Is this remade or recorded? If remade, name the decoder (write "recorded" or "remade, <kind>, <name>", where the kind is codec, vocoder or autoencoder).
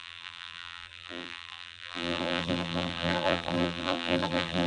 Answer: remade, vocoder, BigVGAN v2